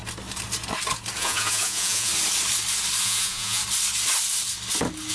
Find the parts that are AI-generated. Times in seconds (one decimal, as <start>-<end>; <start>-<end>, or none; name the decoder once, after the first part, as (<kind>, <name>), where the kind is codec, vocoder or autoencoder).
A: 1.2-2.1 (vocoder, Vocos); 3.0-3.6